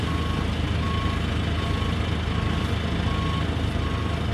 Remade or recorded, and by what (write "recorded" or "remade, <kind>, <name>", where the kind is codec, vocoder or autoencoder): recorded